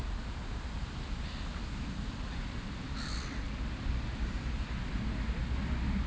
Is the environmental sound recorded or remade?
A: recorded